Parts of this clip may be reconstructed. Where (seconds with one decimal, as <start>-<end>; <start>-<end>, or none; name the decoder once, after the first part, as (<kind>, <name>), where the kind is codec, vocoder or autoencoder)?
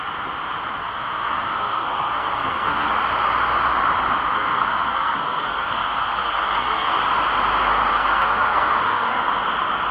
0.8-2.9 (codec, SNAC); 4.3-7.0; 7.9-9.2